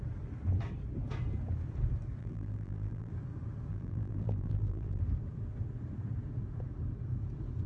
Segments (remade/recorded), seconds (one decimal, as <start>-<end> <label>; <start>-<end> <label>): 0.0-2.2 recorded; 2.2-3.1 remade; 3.1-3.7 recorded; 3.7-5.0 remade; 5.0-7.7 recorded